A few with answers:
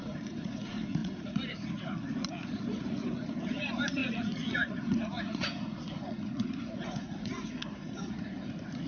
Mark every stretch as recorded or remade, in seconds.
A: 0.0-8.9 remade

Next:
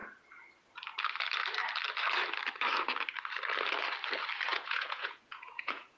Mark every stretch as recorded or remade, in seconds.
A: 0.0-4.5 recorded; 4.5-6.0 remade

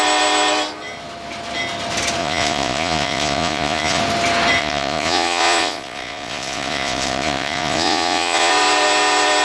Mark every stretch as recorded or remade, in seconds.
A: 0.0-2.2 recorded; 2.2-4.0 remade; 4.0-4.6 recorded; 4.6-8.5 remade; 8.5-9.4 recorded

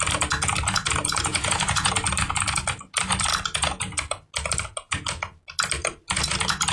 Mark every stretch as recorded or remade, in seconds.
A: 0.0-1.3 recorded; 1.3-1.9 remade; 1.9-6.7 recorded

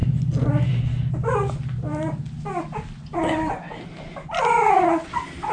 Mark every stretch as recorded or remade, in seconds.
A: 0.0-5.5 recorded